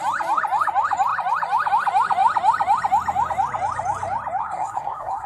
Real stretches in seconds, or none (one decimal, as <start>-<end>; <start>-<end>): 0.0-4.4